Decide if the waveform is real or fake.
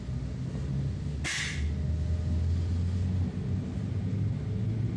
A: real